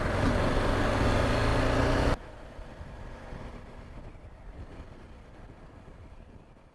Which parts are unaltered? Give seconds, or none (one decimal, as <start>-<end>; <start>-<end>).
0.0-6.7